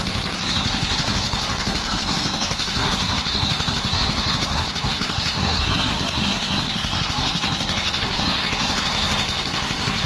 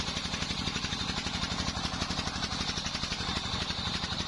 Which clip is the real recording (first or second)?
second